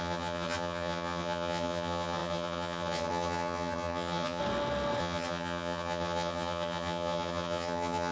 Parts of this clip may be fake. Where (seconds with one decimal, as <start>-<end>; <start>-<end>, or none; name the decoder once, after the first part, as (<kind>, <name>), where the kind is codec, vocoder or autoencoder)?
0.0-4.4 (vocoder, HiFi-GAN); 5.0-8.1